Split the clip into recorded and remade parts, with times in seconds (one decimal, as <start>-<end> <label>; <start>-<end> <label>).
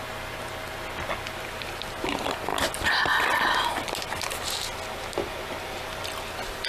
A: 0.0-6.7 recorded